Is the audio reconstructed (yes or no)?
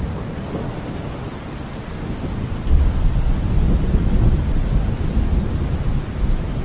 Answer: no